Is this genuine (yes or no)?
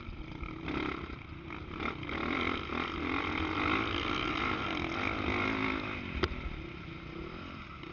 yes